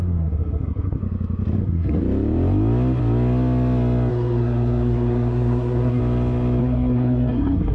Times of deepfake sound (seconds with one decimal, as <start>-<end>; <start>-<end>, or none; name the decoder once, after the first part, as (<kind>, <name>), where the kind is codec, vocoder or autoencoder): 0.0-1.0 (codec, SNAC); 1.6-2.0; 4.1-6.0; 6.6-7.7